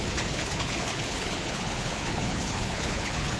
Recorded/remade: remade